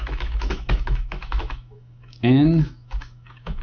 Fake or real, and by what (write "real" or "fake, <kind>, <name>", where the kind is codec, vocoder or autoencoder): fake, autoencoder, DAC-VAE